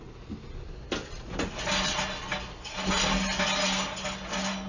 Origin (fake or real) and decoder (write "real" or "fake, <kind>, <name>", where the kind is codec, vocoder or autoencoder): real